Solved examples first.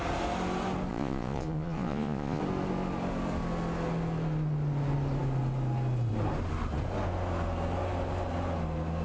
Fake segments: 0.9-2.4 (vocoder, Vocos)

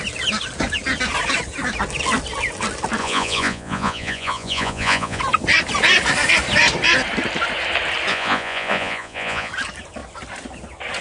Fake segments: 3.0-5.2 (vocoder, Vocos); 8.1-9.5

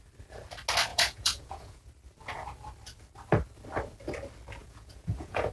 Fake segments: 0.9-1.9 (vocoder, Vocos); 4.6-5.5

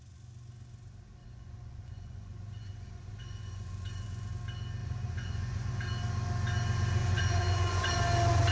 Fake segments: 1.2-4.3 (vocoder, Vocos); 4.8-5.8; 7.0-7.9

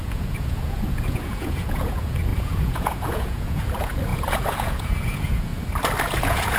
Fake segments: 0.0-5.5 (vocoder, Vocos); 6.0-6.6

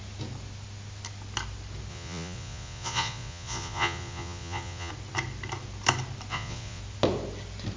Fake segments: 1.9-4.9 (vocoder, Vocos); 6.3-6.8

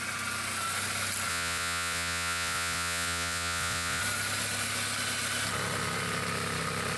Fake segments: 1.3-4.0 (vocoder, Vocos)

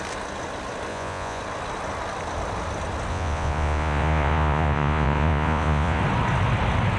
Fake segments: 0.9-1.4 (vocoder, Vocos); 3.1-6.0